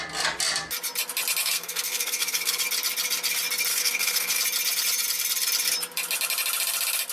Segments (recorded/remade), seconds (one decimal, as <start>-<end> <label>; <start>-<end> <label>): 0.0-1.4 recorded; 1.4-2.6 remade; 2.6-3.7 recorded; 3.7-4.4 remade; 4.4-7.1 recorded